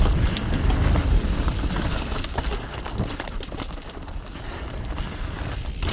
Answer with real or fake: real